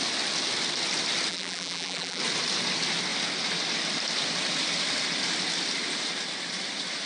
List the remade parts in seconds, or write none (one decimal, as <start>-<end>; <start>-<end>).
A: 1.3-2.2